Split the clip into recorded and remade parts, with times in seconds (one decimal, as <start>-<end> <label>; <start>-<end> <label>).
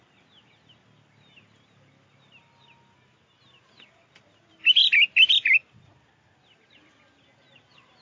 0.0-8.0 recorded